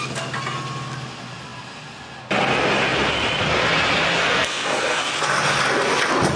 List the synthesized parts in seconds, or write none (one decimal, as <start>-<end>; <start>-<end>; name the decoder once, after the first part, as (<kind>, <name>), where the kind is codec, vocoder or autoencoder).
4.2-5.1 (codec, SNAC)